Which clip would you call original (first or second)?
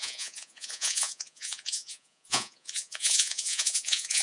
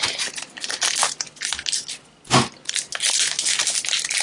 second